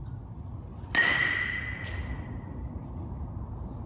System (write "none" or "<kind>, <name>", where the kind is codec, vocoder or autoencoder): none